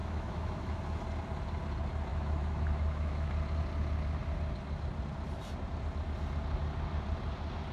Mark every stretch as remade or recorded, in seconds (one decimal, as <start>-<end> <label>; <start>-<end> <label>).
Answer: 0.0-0.8 remade; 0.8-2.1 recorded; 2.1-3.3 remade; 3.3-7.7 recorded